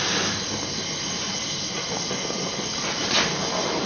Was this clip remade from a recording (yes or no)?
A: no